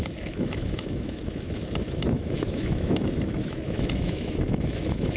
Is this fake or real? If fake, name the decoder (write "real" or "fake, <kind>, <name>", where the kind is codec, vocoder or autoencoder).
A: fake, autoencoder, DAC-VAE